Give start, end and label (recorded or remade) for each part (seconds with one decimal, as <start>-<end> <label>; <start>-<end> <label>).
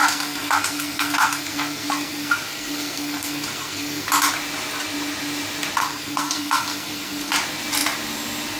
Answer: 0.0-4.1 remade; 4.1-5.8 recorded; 5.8-7.3 remade; 7.3-8.6 recorded